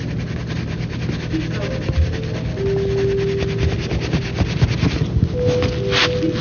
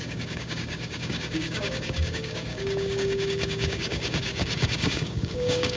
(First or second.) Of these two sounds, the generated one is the second